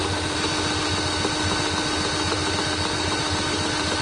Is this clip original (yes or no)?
yes